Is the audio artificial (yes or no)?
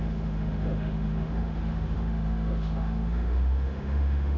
yes